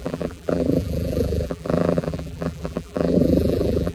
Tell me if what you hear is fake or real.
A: fake